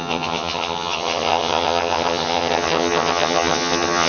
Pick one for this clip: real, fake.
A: fake